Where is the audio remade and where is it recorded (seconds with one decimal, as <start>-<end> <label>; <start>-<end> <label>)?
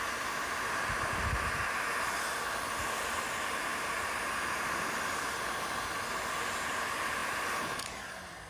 0.0-8.5 recorded